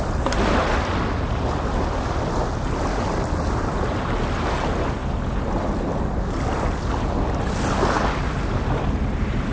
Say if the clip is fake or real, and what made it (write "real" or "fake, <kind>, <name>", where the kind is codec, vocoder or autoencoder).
real